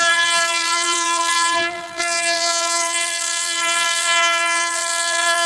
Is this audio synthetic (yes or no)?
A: yes